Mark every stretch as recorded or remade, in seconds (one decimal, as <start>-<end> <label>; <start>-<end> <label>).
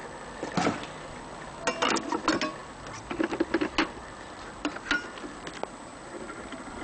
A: 0.0-6.8 recorded